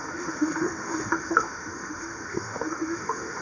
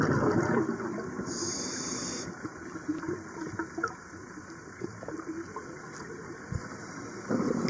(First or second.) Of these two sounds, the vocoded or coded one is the first